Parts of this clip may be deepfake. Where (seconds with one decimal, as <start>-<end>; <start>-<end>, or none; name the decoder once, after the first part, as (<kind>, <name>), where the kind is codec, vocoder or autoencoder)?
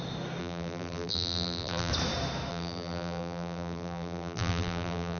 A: 0.4-1.9 (vocoder, BigVGAN v2); 2.5-5.2